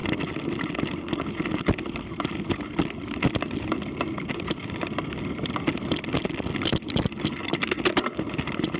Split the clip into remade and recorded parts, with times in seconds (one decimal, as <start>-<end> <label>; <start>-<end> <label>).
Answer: 0.0-8.8 recorded